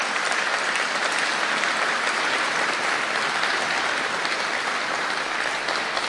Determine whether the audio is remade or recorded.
remade